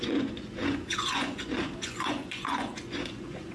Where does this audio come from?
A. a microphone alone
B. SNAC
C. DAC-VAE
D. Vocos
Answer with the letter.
D